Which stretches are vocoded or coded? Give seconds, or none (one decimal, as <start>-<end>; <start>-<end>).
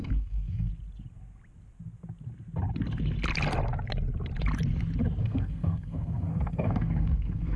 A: 0.0-0.7; 5.2-7.6